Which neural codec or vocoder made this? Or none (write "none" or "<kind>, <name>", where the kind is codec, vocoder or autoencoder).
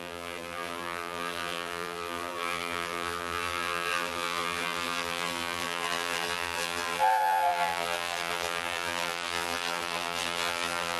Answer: vocoder, BigVGAN v2